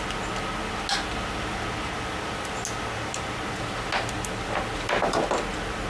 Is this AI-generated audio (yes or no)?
no